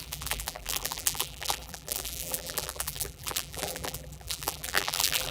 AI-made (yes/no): yes